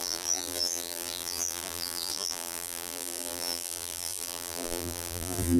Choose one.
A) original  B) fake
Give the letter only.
B